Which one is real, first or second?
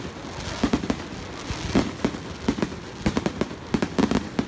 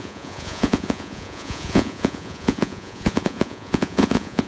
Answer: first